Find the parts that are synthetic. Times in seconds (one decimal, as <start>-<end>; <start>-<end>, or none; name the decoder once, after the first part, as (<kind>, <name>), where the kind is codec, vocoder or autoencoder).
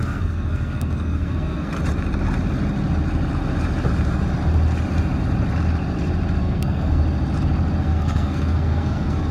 0.0-1.7 (codec, SNAC); 6.4-7.0; 7.8-9.3